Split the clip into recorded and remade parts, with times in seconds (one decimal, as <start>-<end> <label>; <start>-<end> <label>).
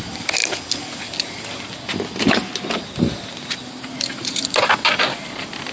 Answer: 0.0-0.4 remade; 0.4-3.8 recorded; 3.8-5.7 remade